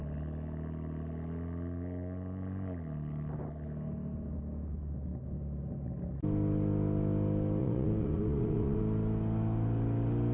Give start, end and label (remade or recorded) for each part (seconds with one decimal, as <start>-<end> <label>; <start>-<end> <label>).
0.0-7.6 recorded; 7.6-8.8 remade; 8.8-10.3 recorded